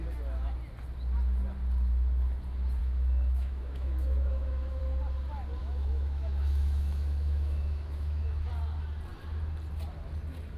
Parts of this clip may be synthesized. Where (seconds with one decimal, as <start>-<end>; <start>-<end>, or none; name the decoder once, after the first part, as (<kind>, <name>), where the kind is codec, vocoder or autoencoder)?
2.8-4.8 (autoencoder, DAC-VAE); 5.6-8.5